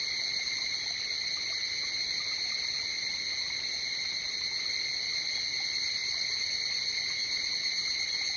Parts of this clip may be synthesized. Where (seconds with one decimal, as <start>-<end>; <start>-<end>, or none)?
none